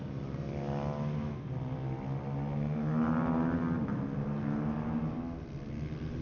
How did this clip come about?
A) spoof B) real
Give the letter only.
B